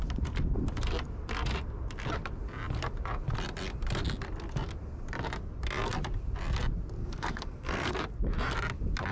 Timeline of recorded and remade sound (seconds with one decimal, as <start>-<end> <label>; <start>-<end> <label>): 0.0-7.0 recorded; 7.0-7.9 remade; 7.9-9.1 recorded